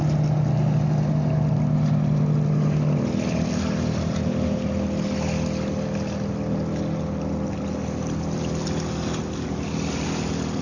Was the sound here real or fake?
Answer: real